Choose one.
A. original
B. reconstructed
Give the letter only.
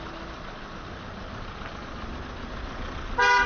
A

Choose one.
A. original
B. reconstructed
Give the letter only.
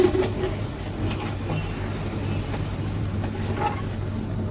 A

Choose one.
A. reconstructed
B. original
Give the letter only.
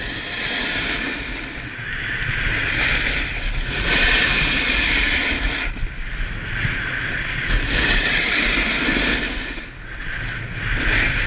B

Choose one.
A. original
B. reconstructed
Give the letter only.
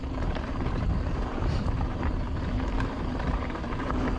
B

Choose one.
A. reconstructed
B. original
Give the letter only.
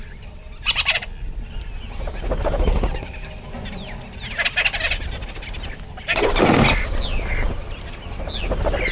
B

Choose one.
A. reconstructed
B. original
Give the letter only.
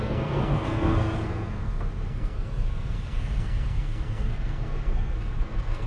A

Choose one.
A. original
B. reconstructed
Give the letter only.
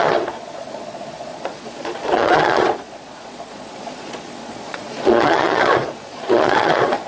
B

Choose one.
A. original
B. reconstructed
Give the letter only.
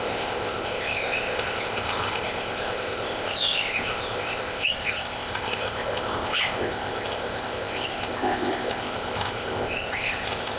B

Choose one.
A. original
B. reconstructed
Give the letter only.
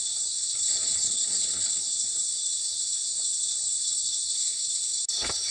B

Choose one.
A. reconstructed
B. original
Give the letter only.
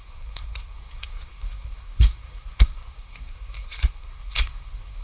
A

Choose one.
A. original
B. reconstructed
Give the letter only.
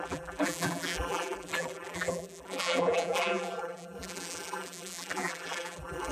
B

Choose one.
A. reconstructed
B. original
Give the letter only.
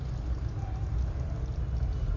B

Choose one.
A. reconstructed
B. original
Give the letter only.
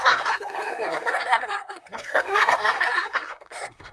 A